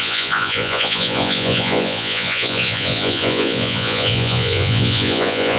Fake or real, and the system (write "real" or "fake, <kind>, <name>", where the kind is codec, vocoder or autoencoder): fake, vocoder, Vocos